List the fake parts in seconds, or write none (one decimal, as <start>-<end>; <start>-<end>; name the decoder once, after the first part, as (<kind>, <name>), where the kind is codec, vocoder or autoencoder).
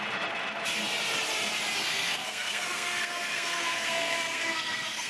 1.9-5.1 (codec, SNAC)